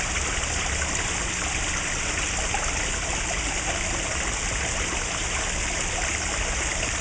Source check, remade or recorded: recorded